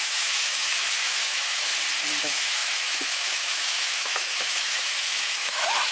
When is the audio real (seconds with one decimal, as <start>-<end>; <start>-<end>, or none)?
1.7-2.2